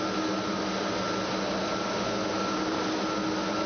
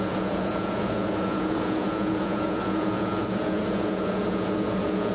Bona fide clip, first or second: first